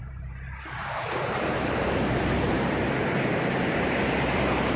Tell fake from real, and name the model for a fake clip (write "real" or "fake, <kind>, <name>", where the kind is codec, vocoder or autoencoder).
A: fake, vocoder, BigVGAN v2